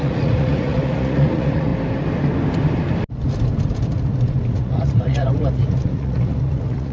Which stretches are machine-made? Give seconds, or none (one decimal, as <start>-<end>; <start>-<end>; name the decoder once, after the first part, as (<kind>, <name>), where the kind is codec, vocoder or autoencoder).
0.0-1.7 (vocoder, Vocos); 4.5-6.9